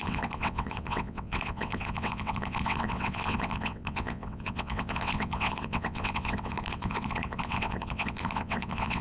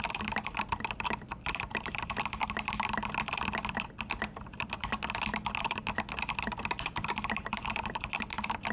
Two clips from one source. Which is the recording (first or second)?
second